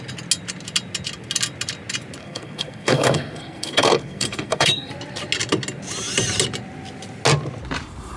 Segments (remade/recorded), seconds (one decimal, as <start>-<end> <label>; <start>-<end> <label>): 0.0-2.2 recorded; 2.2-4.9 remade; 4.9-8.2 recorded